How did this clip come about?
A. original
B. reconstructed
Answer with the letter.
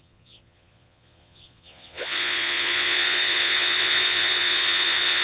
B